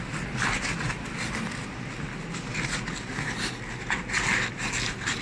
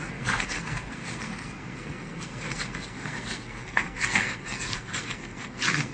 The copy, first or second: second